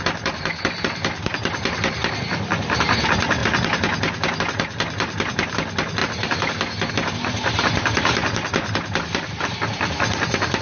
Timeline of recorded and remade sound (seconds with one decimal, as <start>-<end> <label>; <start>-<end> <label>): 0.0-3.4 remade; 3.4-4.4 recorded; 4.4-6.0 remade; 6.0-6.9 recorded; 6.9-10.6 remade